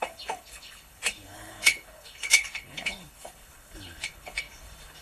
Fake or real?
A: fake